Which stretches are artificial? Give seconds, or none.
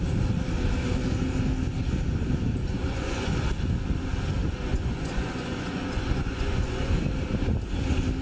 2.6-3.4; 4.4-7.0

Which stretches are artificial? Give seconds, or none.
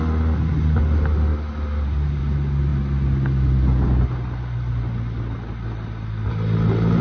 none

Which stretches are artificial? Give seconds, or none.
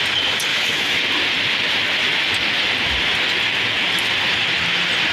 0.5-1.0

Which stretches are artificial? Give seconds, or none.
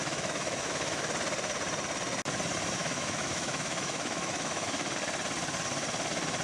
0.0-1.1; 2.8-4.9